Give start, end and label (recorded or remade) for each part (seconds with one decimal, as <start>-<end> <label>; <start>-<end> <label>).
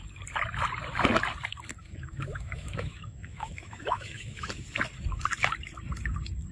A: 0.0-1.8 recorded; 1.8-4.5 remade; 4.5-6.5 recorded